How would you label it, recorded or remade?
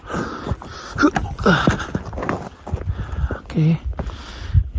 recorded